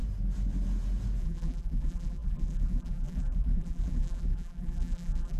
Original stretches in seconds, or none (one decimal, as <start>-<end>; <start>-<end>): 0.0-1.2